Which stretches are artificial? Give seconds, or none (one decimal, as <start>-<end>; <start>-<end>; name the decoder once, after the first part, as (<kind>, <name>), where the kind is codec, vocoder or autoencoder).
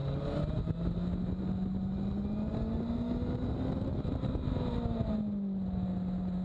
none